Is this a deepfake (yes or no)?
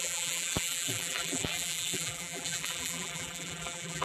yes